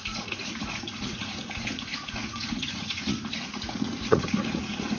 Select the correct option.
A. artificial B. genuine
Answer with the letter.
A